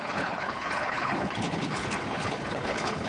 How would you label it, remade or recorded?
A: remade